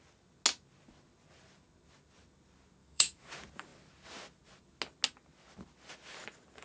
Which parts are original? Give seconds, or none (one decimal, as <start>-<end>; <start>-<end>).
0.0-2.8; 3.3-6.6